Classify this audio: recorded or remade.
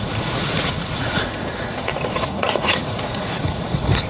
remade